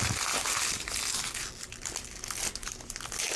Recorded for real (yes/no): yes